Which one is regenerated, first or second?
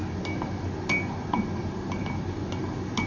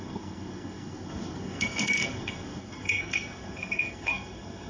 second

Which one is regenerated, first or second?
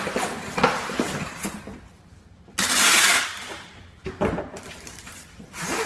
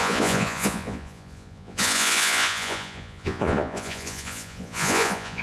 second